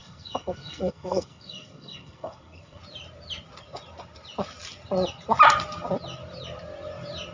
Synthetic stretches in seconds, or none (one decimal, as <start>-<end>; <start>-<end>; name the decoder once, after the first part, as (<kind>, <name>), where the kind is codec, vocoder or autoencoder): 0.0-2.8 (codec, SNAC)